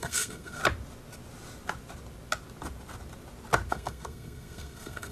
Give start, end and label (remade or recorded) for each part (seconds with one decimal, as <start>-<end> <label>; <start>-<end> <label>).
0.0-0.6 remade; 0.6-3.7 recorded; 3.7-5.1 remade